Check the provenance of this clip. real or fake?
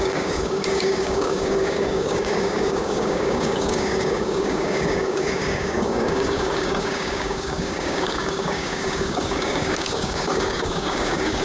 fake